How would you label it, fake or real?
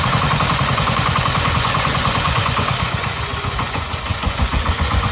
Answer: fake